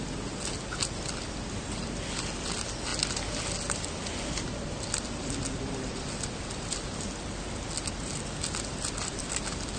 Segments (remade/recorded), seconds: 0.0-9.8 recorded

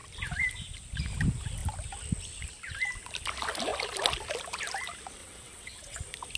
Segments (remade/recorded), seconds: 0.0-5.2 recorded; 5.2-6.0 remade; 6.0-6.4 recorded

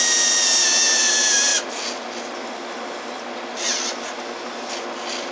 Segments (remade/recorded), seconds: 0.0-5.3 recorded

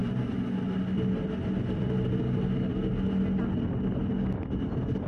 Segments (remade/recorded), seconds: 0.0-5.1 recorded